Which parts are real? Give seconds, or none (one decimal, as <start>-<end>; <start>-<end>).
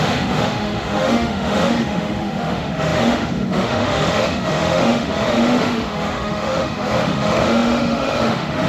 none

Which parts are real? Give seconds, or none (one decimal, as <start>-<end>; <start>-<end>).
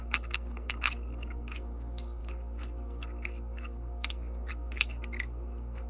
none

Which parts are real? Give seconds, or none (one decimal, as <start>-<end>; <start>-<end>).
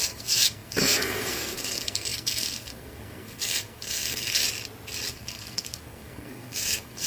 4.4-5.1